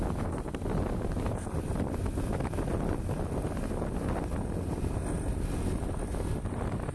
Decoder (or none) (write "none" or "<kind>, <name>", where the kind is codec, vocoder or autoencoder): none